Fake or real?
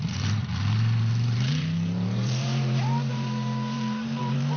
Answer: fake